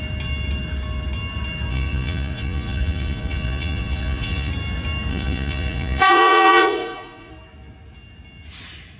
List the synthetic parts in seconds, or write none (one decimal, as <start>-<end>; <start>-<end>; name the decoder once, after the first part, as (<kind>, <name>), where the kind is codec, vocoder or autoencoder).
1.7-4.5 (vocoder, Vocos); 5.1-7.3